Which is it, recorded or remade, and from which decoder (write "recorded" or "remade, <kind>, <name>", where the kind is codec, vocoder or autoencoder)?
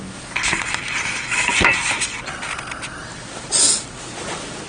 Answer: recorded